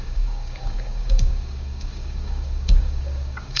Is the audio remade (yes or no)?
yes